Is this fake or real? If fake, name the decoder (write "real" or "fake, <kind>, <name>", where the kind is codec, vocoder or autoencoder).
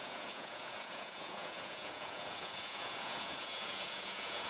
fake, vocoder, Vocos